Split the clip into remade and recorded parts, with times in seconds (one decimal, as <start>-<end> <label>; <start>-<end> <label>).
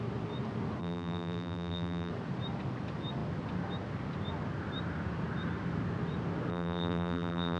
0.0-0.8 recorded; 0.8-2.1 remade; 2.1-6.5 recorded; 6.5-7.6 remade